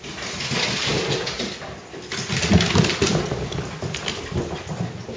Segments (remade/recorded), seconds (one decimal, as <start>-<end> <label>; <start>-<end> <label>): 0.0-5.2 recorded